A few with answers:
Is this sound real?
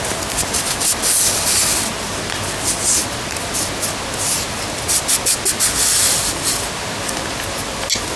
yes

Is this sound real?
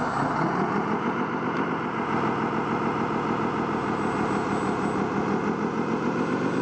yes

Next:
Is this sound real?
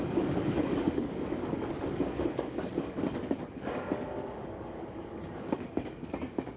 no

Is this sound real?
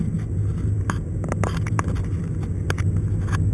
yes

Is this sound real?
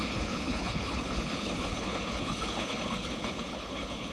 no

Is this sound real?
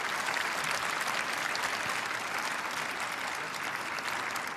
yes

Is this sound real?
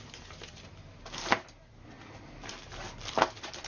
yes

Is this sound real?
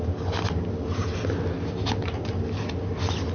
yes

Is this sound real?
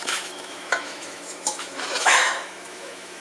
no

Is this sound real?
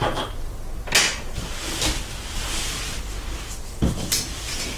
yes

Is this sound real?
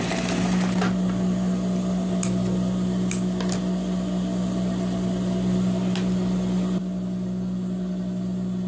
yes